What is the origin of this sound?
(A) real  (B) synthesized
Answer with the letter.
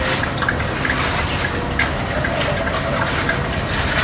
A